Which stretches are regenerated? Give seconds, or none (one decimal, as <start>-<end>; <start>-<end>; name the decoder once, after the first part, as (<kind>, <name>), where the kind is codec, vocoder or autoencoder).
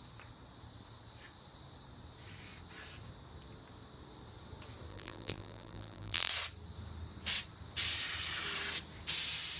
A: 4.9-6.3 (vocoder, BigVGAN v2)